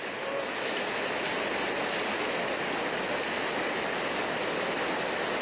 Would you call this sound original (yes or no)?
yes